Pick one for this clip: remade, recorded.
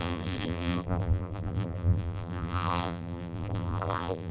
remade